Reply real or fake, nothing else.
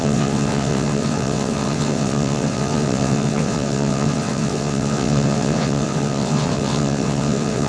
fake